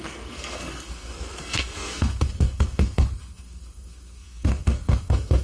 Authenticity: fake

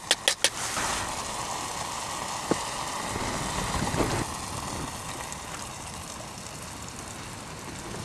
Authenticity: real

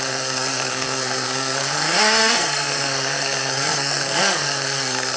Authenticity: fake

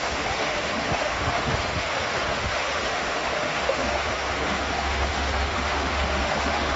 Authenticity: fake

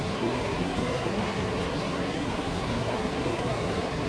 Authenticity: fake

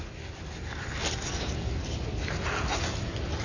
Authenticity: real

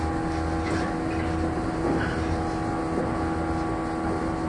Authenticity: real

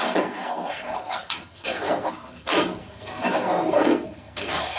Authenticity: fake